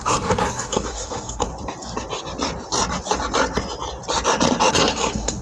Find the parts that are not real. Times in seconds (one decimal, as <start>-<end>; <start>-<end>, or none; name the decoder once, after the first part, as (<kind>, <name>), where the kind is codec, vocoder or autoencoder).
0.0-1.5 (codec, SNAC); 4.7-5.4